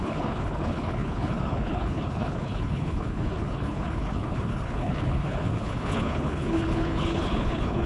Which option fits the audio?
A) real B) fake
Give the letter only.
B